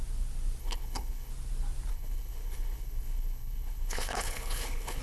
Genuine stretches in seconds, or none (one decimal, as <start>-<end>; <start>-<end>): 0.0-0.6; 1.3-1.9